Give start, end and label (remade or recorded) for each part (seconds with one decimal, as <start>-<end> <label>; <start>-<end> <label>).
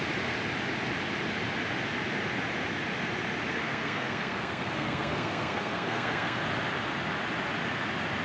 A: 0.0-3.5 recorded; 3.5-6.4 remade; 6.4-8.2 recorded